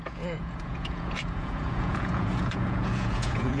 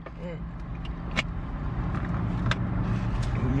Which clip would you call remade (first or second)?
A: first